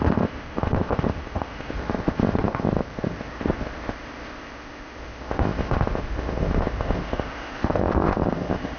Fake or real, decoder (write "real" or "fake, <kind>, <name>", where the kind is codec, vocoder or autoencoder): fake, codec, ZipCodec